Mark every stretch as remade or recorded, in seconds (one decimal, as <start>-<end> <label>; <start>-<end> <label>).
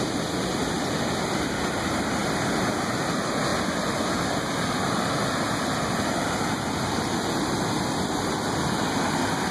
0.0-9.5 recorded